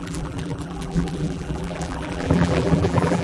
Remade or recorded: remade